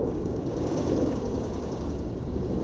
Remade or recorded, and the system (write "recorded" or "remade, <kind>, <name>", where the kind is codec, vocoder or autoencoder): remade, codec, DAC